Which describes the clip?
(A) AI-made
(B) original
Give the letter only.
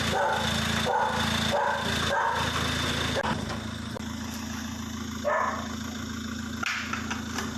B